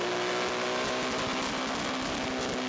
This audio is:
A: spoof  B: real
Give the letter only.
B